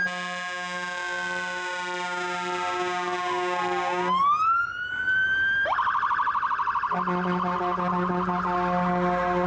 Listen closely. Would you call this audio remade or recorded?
recorded